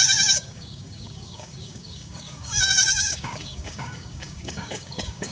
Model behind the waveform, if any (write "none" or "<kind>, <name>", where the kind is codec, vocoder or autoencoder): codec, DAC